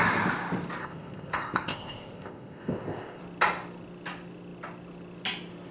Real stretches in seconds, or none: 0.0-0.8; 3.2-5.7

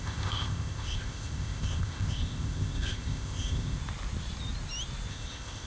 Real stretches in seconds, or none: 3.8-5.1

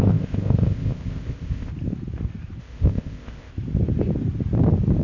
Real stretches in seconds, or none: 1.7-2.6; 3.5-5.0